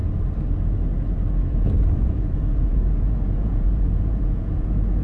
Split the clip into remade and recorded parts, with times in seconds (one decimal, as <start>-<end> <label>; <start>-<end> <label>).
0.0-1.5 recorded; 1.5-5.0 remade